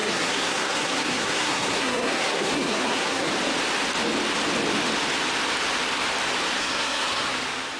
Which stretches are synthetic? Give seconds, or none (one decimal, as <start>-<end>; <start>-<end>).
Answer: 0.0-3.3; 6.6-7.3